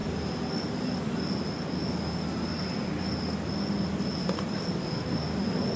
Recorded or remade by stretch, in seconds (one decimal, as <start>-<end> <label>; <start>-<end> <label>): 0.0-5.8 recorded